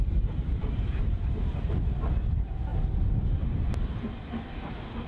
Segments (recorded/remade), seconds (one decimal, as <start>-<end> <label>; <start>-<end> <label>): 0.0-5.1 recorded